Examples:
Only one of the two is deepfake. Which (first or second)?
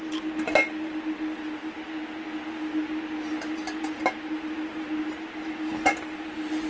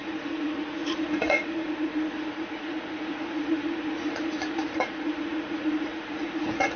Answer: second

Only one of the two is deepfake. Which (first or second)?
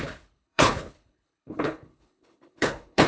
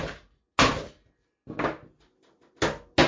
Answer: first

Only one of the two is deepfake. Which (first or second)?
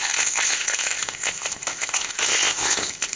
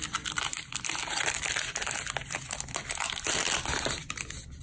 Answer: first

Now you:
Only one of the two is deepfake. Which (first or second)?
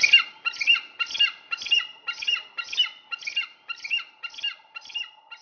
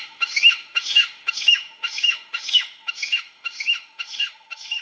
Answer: second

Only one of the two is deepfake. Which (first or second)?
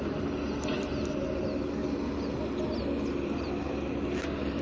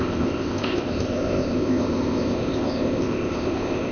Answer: second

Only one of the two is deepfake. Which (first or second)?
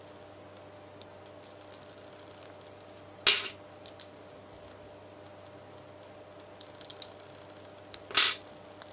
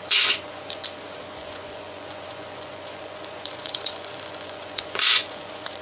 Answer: second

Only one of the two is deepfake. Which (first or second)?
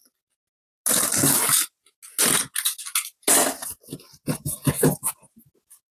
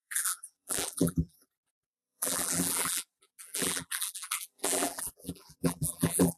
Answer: second